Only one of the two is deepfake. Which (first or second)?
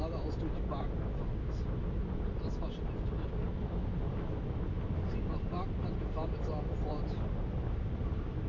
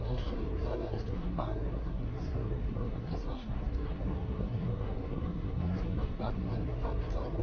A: second